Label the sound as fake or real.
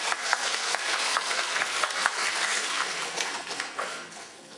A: fake